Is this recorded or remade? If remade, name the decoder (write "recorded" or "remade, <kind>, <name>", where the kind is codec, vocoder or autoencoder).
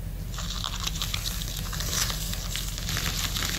recorded